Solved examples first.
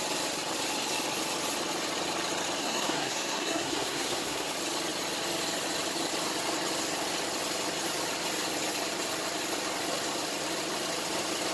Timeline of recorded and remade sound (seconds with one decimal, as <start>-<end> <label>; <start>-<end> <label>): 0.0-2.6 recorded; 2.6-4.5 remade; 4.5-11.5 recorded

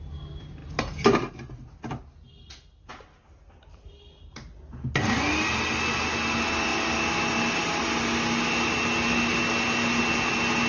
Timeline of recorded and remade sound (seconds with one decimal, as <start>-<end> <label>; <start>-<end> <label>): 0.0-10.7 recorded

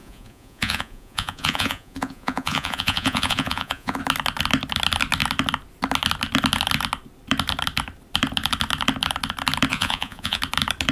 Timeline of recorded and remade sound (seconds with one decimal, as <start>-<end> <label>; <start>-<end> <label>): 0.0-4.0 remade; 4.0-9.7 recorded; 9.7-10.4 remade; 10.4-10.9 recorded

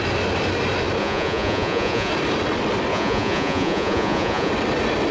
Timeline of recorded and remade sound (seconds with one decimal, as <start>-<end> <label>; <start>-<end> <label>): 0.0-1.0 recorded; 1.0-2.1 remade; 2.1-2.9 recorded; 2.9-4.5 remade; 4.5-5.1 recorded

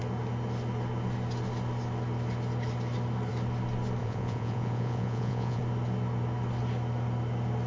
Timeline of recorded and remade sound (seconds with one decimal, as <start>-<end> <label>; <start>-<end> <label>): 0.0-4.0 recorded; 4.0-5.6 remade; 5.6-7.7 recorded